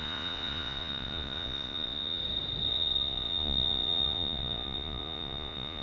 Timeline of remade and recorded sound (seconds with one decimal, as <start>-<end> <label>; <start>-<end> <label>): 0.0-2.2 remade; 2.2-2.7 recorded; 2.7-5.8 remade